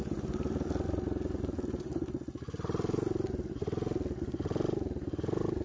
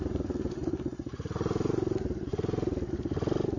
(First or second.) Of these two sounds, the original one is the first